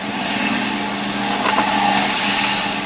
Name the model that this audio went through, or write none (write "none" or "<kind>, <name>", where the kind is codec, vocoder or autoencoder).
none